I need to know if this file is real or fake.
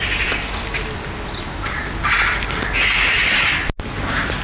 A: real